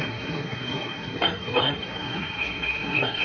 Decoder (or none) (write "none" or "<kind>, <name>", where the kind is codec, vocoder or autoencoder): codec, SNAC